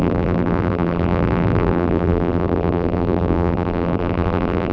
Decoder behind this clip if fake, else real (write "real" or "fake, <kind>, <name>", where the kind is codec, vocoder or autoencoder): fake, vocoder, BigVGAN v2